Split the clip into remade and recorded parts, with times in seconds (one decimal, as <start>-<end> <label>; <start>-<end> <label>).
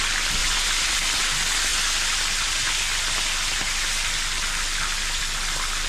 0.0-0.4 recorded; 0.4-1.2 remade; 1.2-5.9 recorded